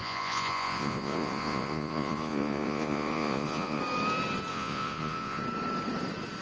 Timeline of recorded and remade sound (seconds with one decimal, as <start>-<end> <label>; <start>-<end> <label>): 0.0-3.8 remade; 3.8-4.5 recorded; 4.5-5.4 remade; 5.4-6.4 recorded